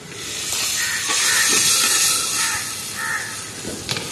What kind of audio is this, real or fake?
real